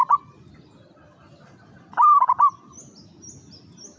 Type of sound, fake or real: real